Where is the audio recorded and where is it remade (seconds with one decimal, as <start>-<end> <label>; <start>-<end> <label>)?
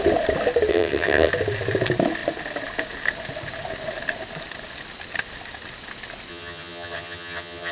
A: 0.0-0.7 recorded; 0.7-1.3 remade; 1.3-6.3 recorded; 6.3-7.7 remade